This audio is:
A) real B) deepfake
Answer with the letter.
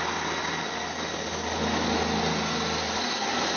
A